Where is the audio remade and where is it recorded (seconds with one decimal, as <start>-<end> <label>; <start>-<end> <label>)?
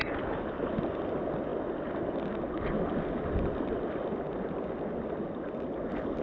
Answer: 0.0-6.2 recorded